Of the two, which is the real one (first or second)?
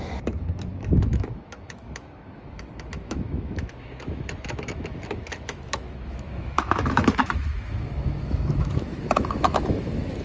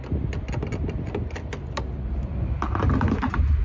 second